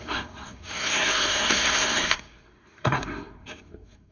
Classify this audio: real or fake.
fake